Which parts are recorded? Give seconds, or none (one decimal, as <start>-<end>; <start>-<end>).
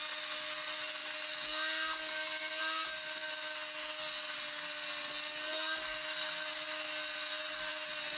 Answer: 0.0-8.2